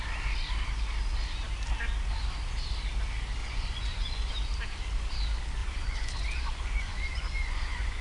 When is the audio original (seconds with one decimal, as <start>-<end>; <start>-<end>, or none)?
0.0-3.4; 4.3-5.6